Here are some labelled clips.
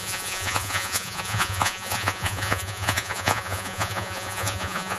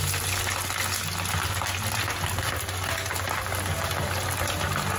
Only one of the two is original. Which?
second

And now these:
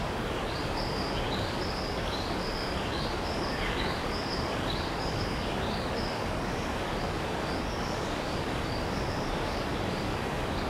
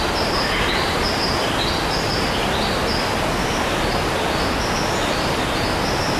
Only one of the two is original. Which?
second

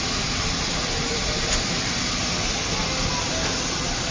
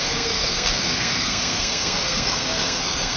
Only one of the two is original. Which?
first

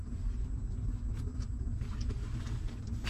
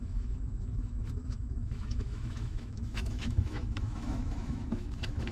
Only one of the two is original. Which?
first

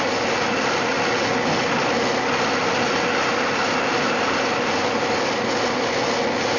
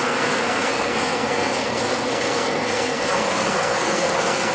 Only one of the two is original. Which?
first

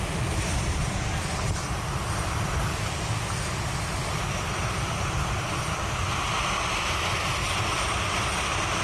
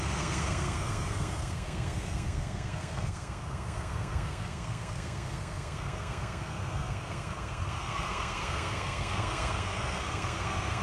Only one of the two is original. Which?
first